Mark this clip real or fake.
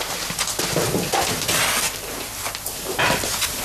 real